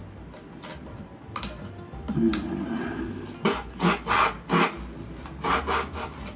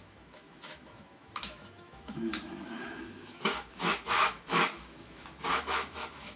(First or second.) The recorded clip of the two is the first